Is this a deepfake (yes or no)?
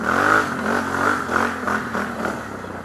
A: no